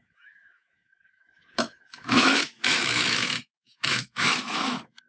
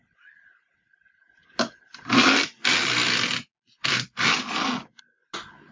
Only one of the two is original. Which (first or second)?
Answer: second